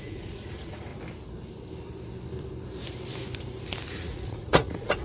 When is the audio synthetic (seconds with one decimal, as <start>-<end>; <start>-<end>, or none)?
0.0-0.9; 3.9-5.0